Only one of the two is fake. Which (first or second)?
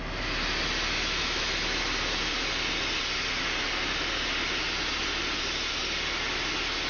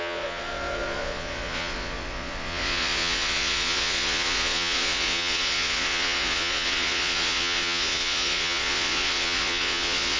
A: second